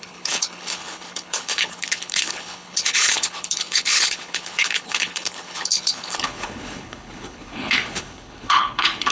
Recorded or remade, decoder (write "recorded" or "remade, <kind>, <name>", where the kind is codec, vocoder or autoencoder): remade, codec, HILCodec